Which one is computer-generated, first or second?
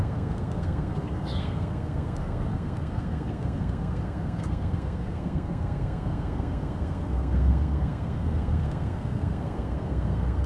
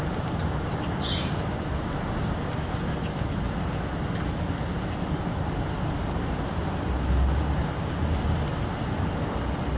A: first